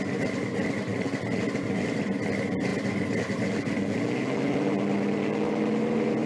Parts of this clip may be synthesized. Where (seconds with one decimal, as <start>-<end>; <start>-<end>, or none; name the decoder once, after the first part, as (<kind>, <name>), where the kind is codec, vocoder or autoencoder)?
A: none